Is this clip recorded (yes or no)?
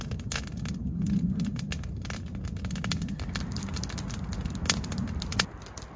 yes